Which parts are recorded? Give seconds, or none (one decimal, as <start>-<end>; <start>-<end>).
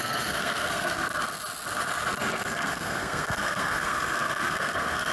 1.2-2.2